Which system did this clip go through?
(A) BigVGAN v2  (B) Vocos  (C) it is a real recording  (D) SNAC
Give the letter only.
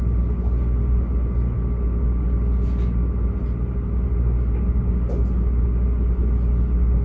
C